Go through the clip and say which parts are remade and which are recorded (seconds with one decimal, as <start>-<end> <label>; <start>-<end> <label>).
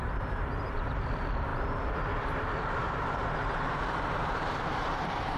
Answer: 0.0-5.4 remade